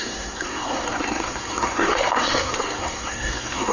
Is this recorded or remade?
remade